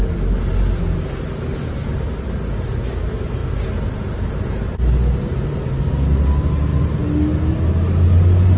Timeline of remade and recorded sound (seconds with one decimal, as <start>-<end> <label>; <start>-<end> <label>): 0.0-8.6 recorded